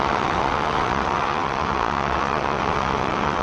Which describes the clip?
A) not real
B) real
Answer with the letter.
A